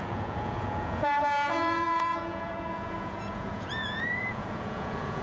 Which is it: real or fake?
fake